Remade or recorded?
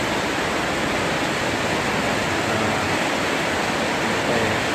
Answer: recorded